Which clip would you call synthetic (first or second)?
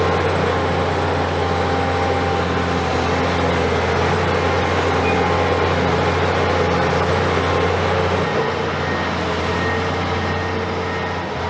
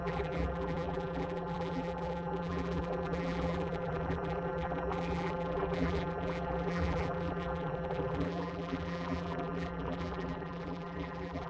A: second